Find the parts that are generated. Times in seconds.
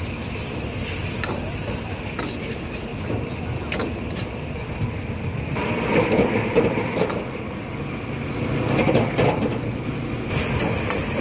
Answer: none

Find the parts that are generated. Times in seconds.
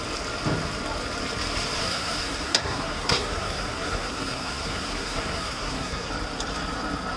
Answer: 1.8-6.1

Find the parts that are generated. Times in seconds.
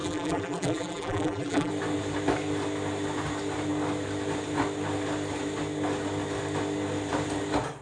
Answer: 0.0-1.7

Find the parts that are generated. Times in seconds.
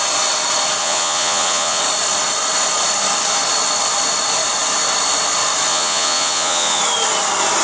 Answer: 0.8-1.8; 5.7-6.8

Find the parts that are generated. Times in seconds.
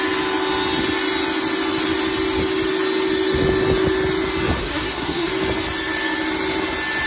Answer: 4.6-5.3